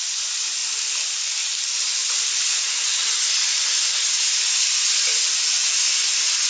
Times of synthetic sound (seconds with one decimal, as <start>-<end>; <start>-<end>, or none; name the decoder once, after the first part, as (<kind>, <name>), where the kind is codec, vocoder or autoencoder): 2.0-3.1 (vocoder, BigVGAN v2); 5.1-5.8